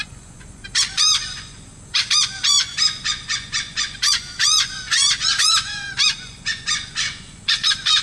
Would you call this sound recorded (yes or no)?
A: no